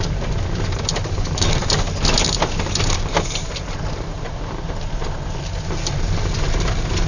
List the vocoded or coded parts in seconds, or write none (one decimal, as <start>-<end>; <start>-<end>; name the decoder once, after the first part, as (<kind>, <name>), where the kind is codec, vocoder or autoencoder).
none